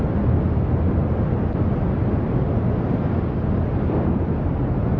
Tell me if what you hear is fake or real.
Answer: real